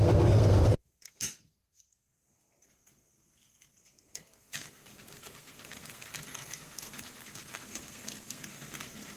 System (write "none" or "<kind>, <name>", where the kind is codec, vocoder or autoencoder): codec, SNAC